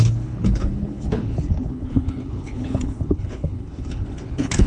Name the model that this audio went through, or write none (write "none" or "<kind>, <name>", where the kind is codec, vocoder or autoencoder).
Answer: codec, HILCodec